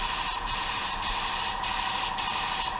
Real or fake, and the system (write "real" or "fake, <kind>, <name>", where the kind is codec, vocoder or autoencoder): real